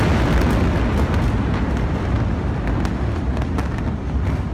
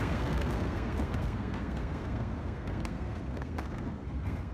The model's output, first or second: second